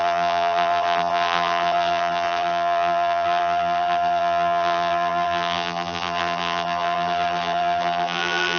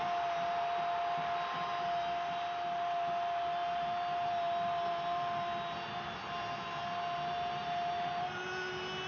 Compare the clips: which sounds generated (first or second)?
first